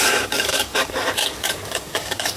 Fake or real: fake